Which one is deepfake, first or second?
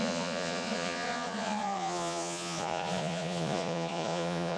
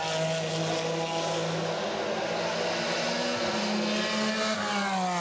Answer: first